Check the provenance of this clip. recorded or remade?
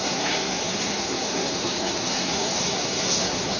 remade